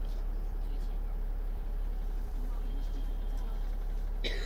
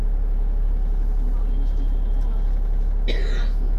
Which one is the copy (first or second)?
first